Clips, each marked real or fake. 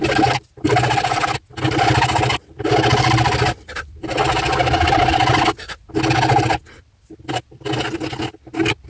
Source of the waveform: real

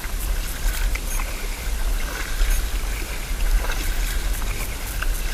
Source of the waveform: real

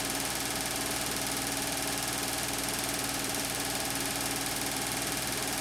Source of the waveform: fake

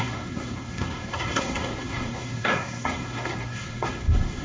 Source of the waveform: fake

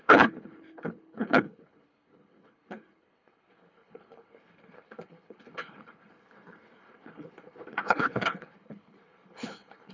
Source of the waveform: fake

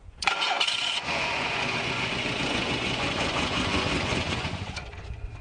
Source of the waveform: fake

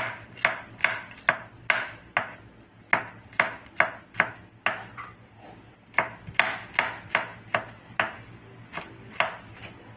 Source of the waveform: real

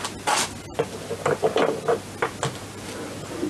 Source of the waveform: real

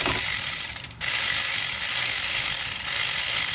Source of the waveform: real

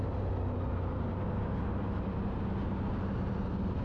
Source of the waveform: real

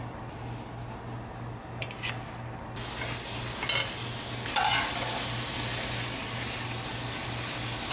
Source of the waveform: real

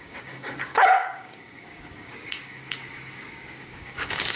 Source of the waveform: fake